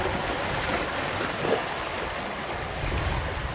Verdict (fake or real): real